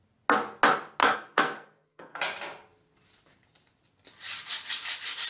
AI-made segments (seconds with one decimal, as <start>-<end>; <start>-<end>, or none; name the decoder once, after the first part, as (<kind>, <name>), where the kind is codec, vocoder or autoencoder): 1.0-2.2 (codec, SNAC)